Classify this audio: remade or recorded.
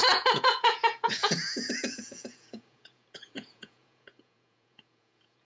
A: remade